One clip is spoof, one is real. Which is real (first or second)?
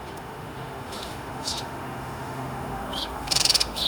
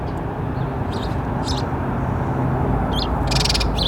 second